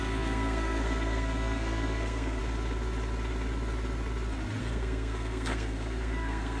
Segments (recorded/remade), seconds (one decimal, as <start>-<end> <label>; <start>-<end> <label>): 0.0-2.4 remade; 2.4-4.6 recorded; 4.6-6.6 remade